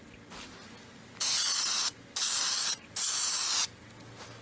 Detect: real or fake real